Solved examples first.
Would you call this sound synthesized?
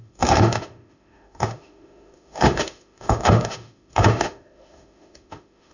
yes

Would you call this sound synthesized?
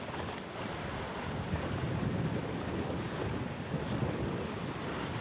no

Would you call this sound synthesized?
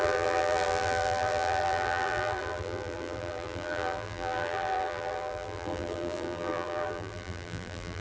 yes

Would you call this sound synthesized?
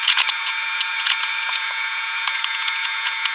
yes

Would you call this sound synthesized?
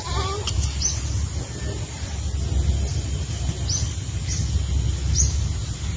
no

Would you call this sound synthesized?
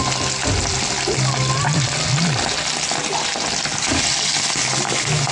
no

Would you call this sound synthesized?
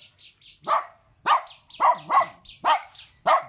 no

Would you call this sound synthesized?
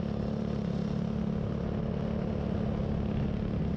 no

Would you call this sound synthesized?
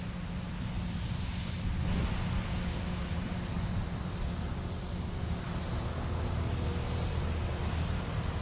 no